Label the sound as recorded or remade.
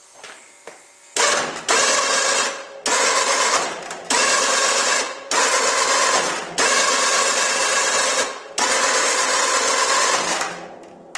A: recorded